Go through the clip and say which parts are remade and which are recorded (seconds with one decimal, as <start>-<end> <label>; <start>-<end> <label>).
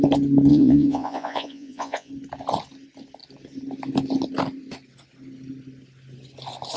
0.0-0.5 recorded; 0.5-2.1 remade; 2.1-6.8 recorded